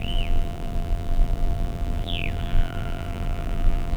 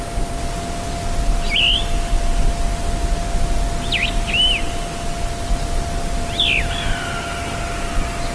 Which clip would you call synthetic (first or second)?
first